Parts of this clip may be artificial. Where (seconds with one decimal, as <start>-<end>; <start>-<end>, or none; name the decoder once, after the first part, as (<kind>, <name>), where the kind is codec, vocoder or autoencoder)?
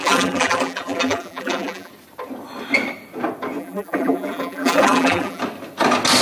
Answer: 0.0-1.9 (vocoder, BigVGAN v2); 3.6-5.4